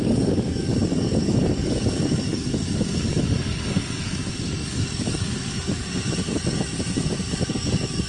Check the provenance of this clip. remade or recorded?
remade